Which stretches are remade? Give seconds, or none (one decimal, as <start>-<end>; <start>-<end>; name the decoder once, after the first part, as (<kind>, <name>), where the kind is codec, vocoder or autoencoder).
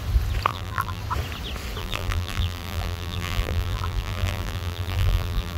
0.5-1.0 (vocoder, BigVGAN v2); 1.8-5.6